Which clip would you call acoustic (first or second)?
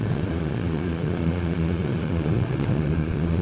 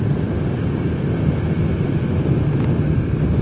second